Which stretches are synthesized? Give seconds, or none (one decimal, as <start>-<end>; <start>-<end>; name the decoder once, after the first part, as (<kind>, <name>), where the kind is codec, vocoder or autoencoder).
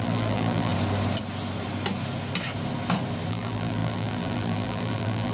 0.0-0.7 (vocoder, BigVGAN v2); 3.3-5.3